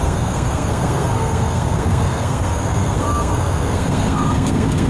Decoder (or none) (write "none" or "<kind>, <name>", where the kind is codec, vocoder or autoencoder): codec, SNAC